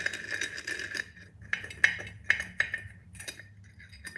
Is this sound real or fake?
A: real